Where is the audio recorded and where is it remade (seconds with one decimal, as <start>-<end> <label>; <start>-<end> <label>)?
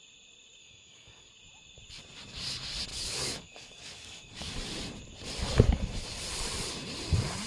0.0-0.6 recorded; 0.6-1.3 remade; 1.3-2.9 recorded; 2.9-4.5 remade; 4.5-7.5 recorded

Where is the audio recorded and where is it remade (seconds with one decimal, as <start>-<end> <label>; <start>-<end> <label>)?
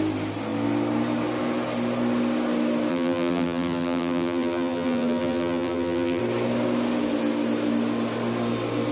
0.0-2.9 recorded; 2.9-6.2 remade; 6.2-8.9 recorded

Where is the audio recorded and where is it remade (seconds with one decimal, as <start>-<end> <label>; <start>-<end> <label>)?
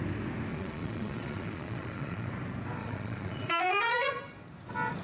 0.0-0.5 recorded; 0.5-2.3 remade; 2.3-2.8 recorded; 2.8-4.2 remade; 4.2-5.0 recorded